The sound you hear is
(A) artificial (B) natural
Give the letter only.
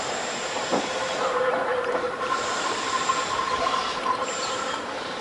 A